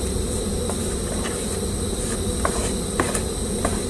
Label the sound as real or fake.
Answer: real